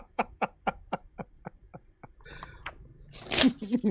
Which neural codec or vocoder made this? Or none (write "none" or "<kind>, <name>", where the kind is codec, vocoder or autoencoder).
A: vocoder, BigVGAN v2